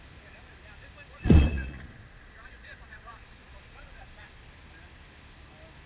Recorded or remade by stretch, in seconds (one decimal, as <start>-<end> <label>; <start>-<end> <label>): 0.0-1.1 recorded; 1.1-4.4 remade; 4.4-5.9 recorded

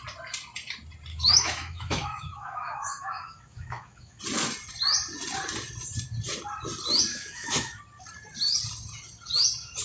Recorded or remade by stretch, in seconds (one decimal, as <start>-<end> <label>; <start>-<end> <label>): 0.0-1.1 recorded; 1.1-4.2 remade; 4.2-7.1 recorded; 7.1-7.8 remade; 7.8-9.8 recorded